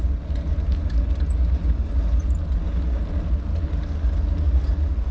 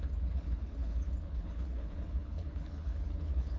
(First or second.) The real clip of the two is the first